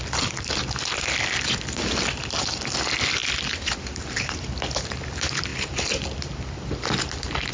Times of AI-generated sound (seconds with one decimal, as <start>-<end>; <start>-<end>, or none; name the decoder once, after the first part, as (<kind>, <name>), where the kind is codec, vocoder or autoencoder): none